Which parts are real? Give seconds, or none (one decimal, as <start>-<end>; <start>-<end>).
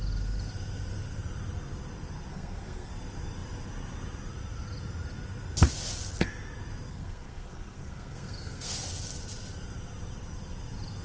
0.0-2.3; 2.9-6.9; 8.7-11.0